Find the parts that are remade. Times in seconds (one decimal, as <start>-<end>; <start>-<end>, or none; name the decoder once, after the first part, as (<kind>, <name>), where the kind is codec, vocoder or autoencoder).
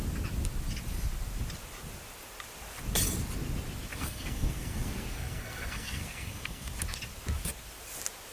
3.9-6.7 (codec, SNAC)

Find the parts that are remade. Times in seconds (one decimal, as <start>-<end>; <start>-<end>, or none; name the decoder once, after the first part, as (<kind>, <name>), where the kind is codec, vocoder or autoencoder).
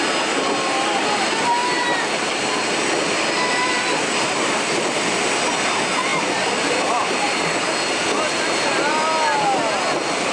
none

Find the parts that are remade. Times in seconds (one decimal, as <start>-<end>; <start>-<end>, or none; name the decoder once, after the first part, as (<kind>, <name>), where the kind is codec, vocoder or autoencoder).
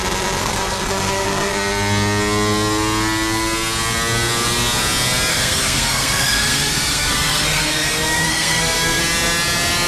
0.4-1.5 (codec, SNAC); 5.3-9.0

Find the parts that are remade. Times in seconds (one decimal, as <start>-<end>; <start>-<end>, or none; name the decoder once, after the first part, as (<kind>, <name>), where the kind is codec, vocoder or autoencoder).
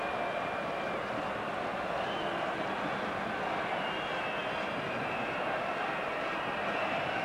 none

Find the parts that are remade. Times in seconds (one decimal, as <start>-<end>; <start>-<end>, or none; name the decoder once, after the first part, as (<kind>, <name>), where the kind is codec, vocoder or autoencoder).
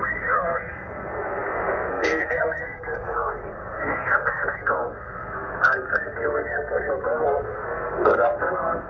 0.0-8.9 (codec, SNAC)